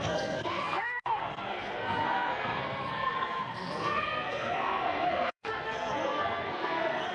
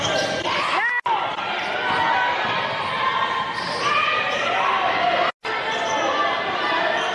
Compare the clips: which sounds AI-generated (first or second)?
first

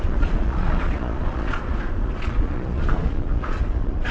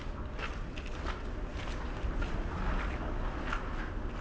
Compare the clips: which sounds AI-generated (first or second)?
first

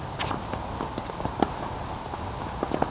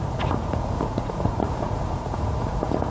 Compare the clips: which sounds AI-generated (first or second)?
second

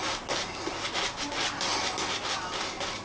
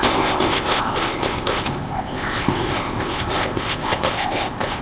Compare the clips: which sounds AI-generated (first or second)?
second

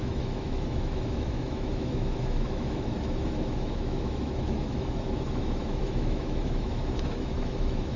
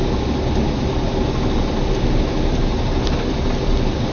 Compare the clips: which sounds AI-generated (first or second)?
first